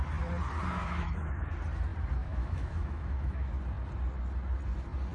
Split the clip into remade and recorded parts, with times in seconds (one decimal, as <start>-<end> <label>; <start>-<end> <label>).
0.0-0.8 recorded; 0.8-1.5 remade; 1.5-2.2 recorded; 2.2-3.6 remade; 3.6-5.1 recorded